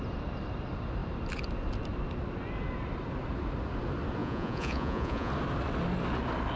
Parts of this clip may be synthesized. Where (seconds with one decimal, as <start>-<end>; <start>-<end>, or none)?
4.2-5.3